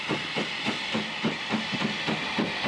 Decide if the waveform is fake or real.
real